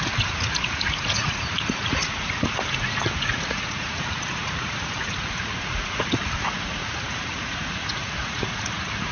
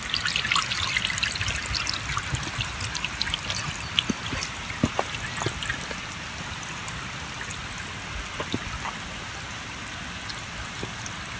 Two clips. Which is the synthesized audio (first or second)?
first